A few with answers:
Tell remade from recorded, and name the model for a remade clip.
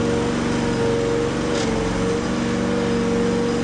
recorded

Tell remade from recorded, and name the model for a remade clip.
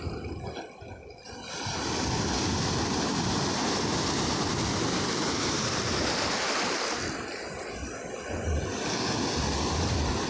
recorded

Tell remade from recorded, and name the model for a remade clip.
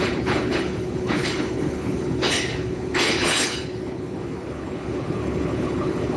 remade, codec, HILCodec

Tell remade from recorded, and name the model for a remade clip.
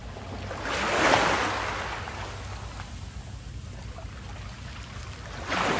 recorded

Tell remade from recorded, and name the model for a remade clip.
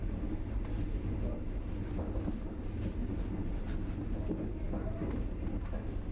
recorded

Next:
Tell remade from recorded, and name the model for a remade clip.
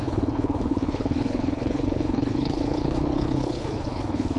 remade, codec, HILCodec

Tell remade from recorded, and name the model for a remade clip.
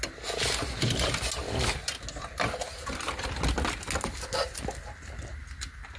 recorded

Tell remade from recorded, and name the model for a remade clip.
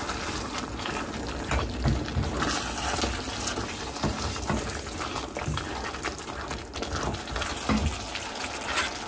recorded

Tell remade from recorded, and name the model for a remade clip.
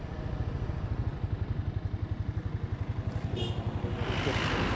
recorded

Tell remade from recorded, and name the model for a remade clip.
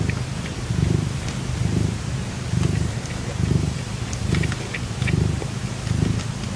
recorded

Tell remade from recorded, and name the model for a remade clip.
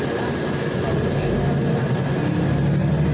recorded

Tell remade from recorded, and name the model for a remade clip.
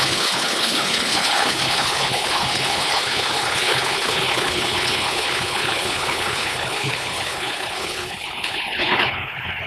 remade, codec, HILCodec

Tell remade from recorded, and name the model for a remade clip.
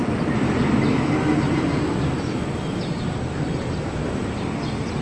recorded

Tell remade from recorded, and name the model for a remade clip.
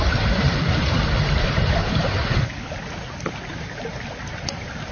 recorded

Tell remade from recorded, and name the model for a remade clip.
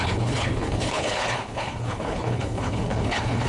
remade, codec, HILCodec